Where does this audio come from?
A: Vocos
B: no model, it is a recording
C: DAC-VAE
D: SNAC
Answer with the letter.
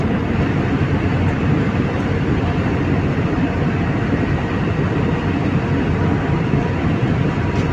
B